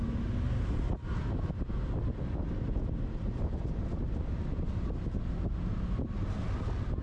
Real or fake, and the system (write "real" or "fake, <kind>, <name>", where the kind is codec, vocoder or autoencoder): real